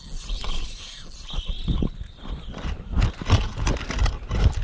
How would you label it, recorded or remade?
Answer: recorded